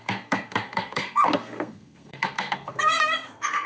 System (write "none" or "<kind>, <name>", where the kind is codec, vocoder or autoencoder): codec, SNAC